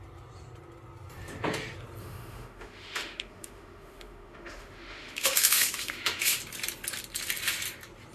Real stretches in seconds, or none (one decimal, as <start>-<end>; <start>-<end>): 0.0-2.0; 6.4-8.1